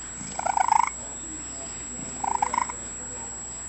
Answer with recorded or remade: recorded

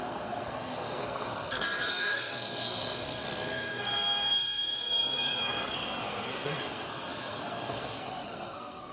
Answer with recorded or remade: remade